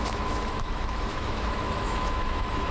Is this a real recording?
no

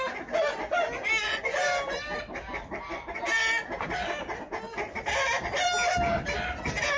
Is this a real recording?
yes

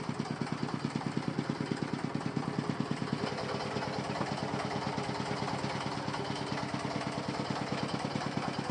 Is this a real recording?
yes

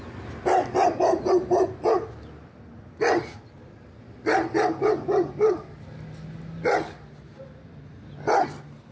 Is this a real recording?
yes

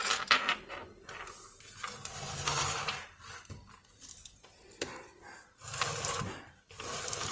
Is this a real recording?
yes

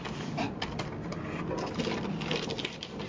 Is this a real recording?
yes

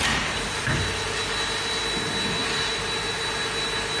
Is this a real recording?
yes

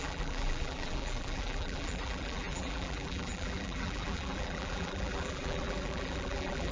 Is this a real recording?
no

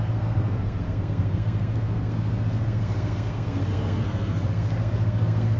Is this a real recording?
no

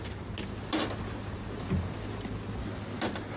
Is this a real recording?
yes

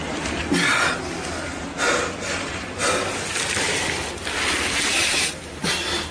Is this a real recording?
yes